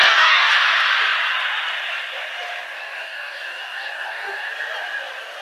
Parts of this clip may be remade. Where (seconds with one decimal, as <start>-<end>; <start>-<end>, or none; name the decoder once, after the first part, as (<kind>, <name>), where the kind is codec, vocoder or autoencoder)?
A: 0.0-0.5 (codec, DAC); 2.8-4.5